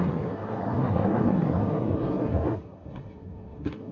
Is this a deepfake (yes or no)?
yes